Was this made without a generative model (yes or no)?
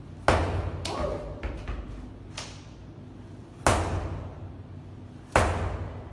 yes